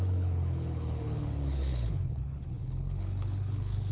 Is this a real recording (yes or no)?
no